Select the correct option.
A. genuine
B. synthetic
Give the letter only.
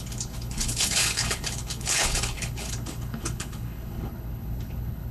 B